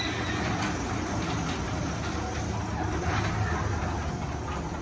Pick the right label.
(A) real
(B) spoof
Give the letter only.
A